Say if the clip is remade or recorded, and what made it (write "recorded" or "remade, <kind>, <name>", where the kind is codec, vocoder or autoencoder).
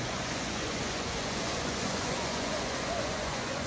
remade, vocoder, Vocos